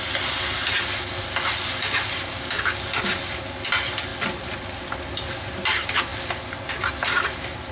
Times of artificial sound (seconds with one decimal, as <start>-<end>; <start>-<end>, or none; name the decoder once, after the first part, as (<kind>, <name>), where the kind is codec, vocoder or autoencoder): none